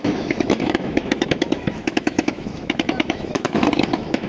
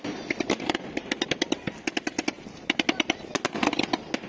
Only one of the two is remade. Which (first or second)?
first